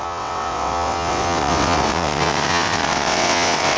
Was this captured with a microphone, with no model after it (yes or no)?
no